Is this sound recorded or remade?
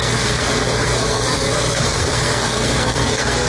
remade